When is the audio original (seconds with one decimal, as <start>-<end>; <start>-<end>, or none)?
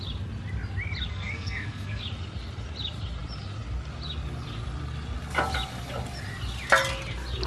0.0-1.1; 2.0-7.5